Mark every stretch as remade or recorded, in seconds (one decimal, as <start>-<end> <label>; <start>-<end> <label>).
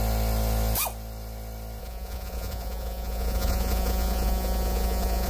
0.0-1.8 recorded; 1.8-5.3 remade